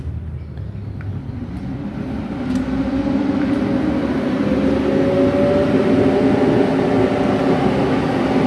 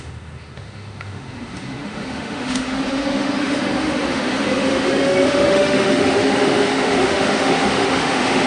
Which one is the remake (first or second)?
second